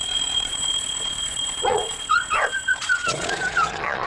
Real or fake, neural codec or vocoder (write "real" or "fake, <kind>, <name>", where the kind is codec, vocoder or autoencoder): fake, vocoder, Vocos